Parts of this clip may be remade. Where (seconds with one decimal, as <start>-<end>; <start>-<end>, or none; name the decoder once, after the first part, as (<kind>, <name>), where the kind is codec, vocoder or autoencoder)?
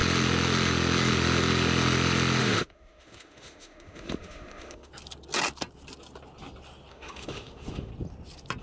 2.4-4.9 (autoencoder, DAC-VAE); 6.9-7.9